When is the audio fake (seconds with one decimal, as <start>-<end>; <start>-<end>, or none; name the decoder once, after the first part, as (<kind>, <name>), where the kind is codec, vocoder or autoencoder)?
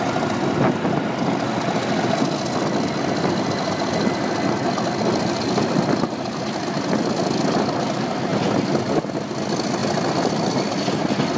none